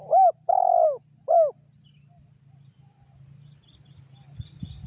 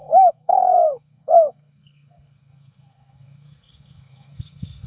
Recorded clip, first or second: first